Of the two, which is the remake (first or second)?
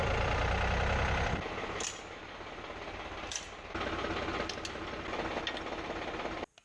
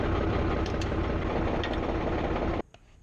second